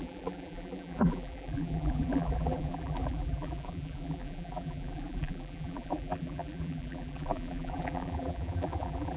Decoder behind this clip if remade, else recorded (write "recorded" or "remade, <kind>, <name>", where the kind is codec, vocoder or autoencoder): remade, vocoder, BigVGAN v2